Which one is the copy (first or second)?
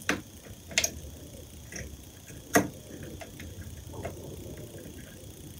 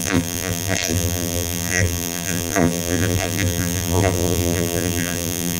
second